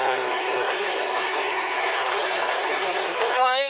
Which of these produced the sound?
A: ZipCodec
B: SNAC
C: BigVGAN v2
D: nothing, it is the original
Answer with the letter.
B